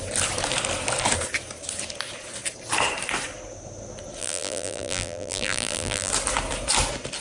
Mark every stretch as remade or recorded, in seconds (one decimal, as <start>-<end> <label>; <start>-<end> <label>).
0.0-4.2 recorded; 4.2-6.1 remade; 6.1-7.2 recorded